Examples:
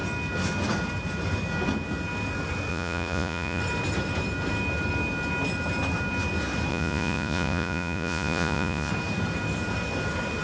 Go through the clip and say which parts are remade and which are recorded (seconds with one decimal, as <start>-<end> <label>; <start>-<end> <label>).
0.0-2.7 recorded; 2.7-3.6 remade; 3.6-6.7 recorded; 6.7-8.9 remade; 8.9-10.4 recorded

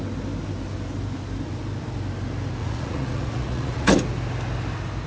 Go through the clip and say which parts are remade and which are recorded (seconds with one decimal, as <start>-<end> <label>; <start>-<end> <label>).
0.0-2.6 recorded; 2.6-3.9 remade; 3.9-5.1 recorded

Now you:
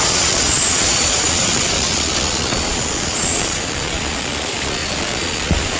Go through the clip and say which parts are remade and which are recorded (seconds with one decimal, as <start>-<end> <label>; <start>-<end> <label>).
0.0-5.8 remade

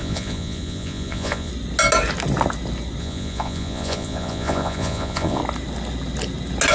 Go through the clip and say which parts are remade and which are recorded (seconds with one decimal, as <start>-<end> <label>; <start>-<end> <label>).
0.0-1.5 remade; 1.5-3.0 recorded; 3.0-5.4 remade; 5.4-6.7 recorded

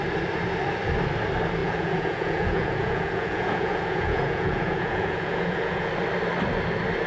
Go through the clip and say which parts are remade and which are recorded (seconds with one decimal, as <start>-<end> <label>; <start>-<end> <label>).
0.0-1.6 recorded; 1.6-5.9 remade; 5.9-7.1 recorded

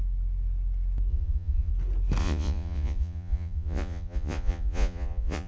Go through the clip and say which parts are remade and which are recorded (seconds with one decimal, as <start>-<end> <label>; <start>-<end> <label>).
0.0-1.1 recorded; 1.1-1.7 remade; 1.7-2.2 recorded; 2.2-5.5 remade

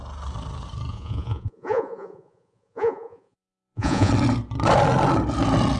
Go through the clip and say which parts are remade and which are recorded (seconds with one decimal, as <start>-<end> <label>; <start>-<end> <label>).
0.0-0.9 recorded; 0.9-4.1 remade; 4.1-5.8 recorded

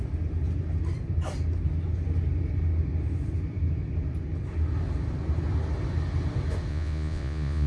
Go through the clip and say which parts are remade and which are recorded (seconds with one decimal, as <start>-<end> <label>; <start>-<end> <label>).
0.0-6.7 recorded; 6.7-7.7 remade